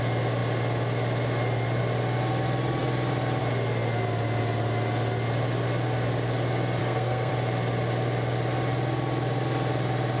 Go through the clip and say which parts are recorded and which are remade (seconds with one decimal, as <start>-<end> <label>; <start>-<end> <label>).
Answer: 0.0-6.8 recorded; 6.8-7.3 remade; 7.3-10.2 recorded